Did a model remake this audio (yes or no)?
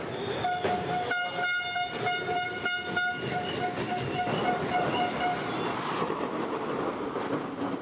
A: no